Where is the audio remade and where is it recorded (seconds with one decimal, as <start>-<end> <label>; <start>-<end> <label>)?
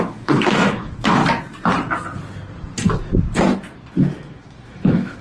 0.0-1.2 remade; 1.2-4.3 recorded; 4.3-5.2 remade